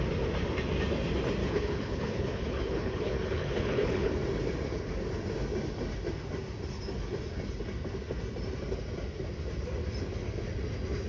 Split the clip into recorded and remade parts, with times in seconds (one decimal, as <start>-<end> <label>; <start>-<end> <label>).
0.0-1.4 recorded; 1.4-4.1 remade; 4.1-11.1 recorded